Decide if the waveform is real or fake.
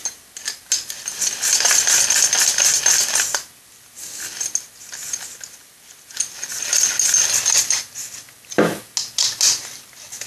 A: real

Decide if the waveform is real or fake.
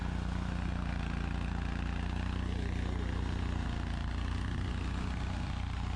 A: real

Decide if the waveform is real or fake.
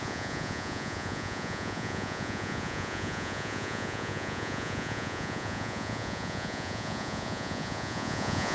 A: fake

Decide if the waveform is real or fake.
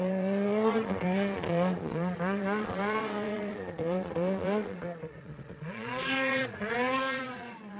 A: fake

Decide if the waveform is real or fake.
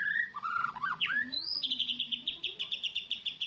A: fake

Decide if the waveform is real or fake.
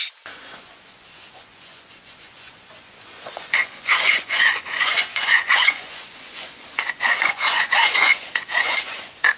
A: fake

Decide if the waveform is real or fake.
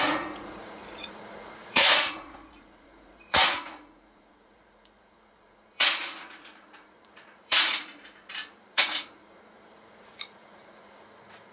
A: fake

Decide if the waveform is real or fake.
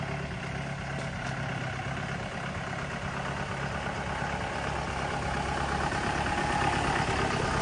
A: real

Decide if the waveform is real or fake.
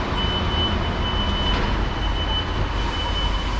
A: real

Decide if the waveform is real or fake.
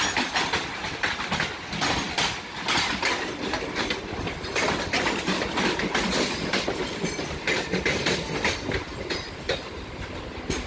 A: real